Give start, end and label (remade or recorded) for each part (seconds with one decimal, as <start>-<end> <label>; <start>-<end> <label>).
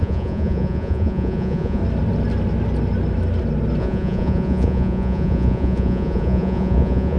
0.0-1.8 remade; 1.8-3.8 recorded; 3.8-7.2 remade